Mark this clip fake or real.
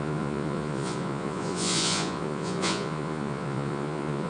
fake